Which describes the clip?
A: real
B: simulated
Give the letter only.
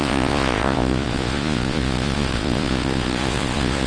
B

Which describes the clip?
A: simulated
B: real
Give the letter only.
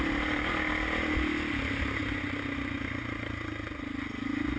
B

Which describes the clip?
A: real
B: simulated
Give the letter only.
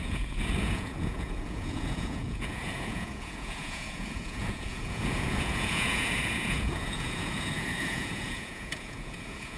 B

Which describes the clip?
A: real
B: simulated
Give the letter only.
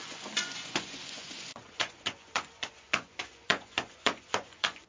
B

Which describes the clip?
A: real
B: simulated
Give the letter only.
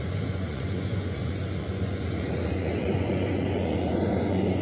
B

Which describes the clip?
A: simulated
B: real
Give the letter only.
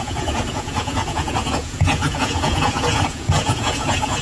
A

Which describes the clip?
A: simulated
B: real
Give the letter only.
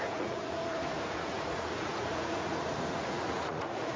A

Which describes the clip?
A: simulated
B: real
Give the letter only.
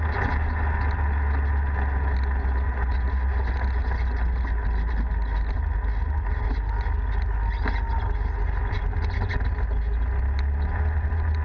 B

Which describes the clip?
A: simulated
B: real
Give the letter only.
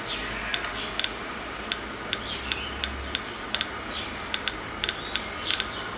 B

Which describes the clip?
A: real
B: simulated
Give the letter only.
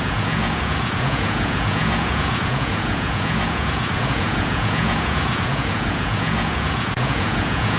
B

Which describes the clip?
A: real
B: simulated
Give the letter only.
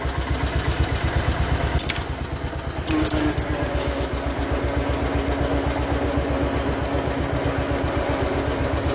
A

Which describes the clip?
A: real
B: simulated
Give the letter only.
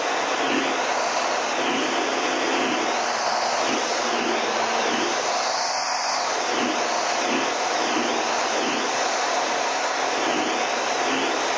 A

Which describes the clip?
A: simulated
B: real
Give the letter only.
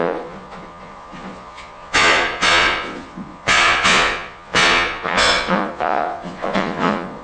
A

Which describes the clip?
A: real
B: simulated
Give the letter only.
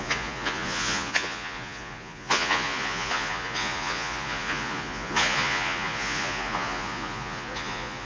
B